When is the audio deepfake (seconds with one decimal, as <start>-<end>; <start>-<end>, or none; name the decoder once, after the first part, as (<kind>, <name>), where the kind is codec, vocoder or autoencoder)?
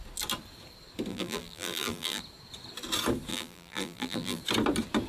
1.1-2.2 (vocoder, BigVGAN v2); 3.3-4.4